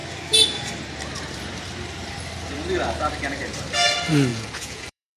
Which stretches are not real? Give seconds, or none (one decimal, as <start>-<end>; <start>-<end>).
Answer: 4.3-5.2